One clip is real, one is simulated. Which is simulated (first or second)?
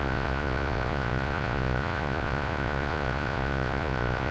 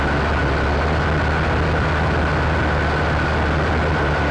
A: first